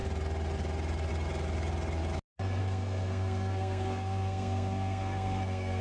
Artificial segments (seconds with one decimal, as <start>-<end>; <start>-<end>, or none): 2.6-5.8